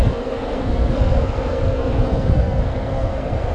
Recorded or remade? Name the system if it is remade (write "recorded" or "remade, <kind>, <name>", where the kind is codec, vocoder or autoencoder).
remade, codec, SNAC